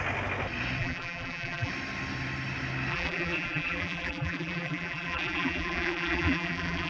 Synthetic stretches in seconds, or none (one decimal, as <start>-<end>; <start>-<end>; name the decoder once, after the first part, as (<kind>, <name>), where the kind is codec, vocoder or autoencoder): 0.8-1.7 (vocoder, BigVGAN v2); 2.9-6.9